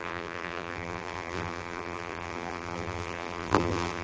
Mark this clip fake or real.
fake